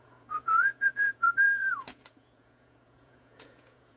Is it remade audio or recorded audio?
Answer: remade